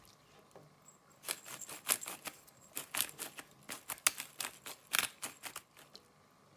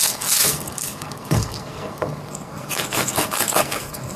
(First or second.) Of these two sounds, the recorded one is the first